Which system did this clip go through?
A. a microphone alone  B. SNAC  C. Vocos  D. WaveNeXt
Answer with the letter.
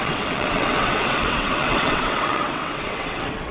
D